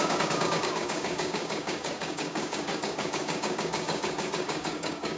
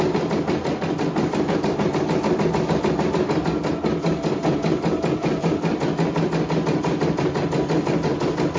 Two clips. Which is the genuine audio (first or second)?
second